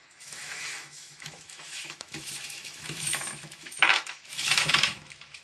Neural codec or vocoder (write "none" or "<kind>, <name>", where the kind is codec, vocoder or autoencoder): autoencoder, DAC-VAE